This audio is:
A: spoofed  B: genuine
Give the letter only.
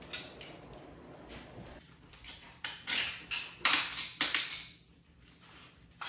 B